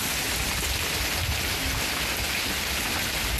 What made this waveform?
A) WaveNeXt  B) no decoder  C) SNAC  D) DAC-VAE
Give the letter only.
B